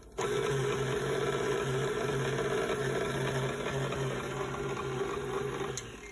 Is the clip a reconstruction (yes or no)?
no